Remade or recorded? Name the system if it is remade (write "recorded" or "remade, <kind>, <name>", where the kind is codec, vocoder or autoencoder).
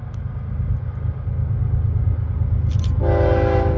recorded